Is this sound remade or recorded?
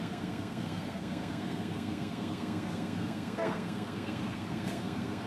remade